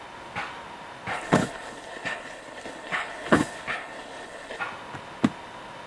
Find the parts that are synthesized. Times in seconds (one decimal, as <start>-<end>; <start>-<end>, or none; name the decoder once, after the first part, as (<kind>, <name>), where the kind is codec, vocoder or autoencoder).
1.1-4.6 (codec, HILCodec)